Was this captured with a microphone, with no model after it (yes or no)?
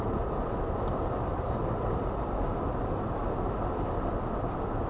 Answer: yes